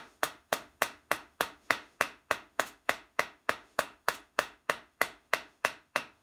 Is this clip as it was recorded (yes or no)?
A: no